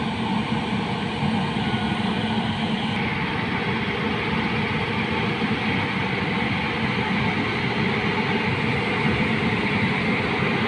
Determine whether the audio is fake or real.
real